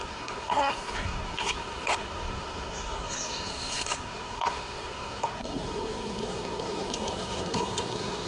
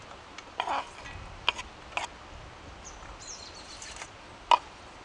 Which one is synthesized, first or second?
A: first